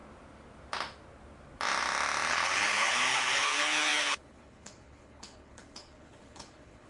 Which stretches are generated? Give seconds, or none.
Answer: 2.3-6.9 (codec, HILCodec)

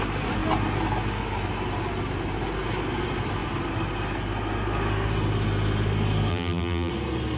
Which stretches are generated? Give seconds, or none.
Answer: 6.3-6.9 (vocoder, BigVGAN v2)

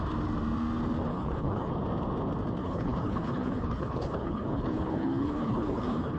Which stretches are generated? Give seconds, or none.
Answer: 1.1-1.7 (codec, HILCodec); 2.6-6.2